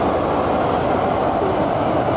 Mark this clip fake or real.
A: real